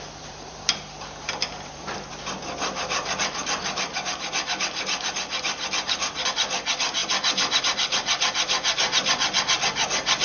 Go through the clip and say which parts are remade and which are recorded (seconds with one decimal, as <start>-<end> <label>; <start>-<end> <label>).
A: 0.0-10.2 remade